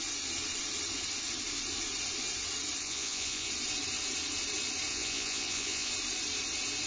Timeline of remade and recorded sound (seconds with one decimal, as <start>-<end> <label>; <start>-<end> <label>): 0.0-2.8 recorded; 2.8-3.5 remade; 3.5-4.9 recorded; 4.9-5.9 remade; 5.9-6.9 recorded